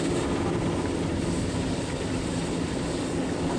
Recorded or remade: recorded